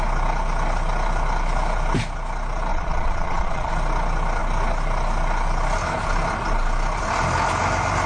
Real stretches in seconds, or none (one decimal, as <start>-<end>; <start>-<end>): 0.0-2.7; 3.7-8.1